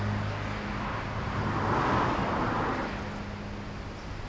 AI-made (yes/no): no